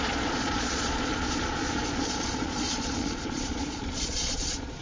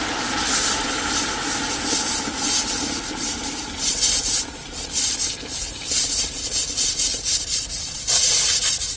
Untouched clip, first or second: second